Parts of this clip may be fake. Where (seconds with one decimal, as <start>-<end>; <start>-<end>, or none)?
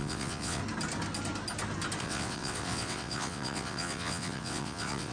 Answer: 0.0-0.6; 2.0-5.1